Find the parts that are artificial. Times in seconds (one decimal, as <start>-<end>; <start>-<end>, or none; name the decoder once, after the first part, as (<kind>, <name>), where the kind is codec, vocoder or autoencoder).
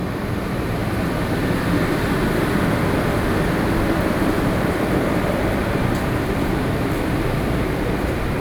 0.0-0.8 (vocoder, BigVGAN v2); 3.7-8.4